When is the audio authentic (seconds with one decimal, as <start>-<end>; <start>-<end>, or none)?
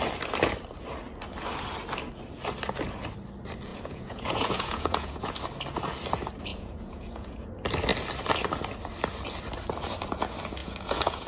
0.0-3.7; 5.4-6.5; 7.5-10.6